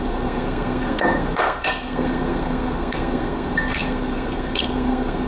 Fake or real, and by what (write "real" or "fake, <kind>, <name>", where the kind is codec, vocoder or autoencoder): fake, codec, SNAC